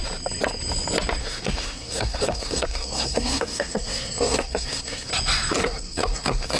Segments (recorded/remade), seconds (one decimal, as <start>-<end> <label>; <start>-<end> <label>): 0.0-1.2 recorded; 1.2-5.1 remade; 5.1-5.6 recorded; 5.6-6.6 remade